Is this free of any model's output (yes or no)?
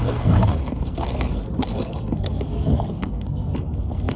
no